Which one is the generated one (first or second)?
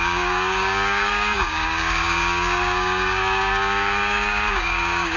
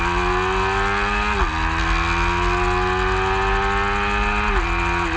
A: first